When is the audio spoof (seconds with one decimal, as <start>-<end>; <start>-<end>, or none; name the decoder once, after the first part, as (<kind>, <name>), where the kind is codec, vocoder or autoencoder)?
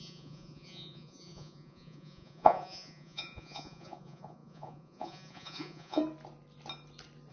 0.0-6.0 (vocoder, Vocos)